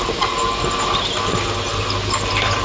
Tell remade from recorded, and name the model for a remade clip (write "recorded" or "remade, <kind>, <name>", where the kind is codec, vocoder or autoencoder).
recorded